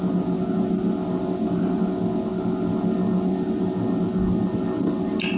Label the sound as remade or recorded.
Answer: recorded